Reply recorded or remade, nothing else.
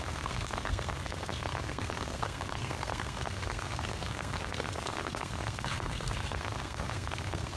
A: remade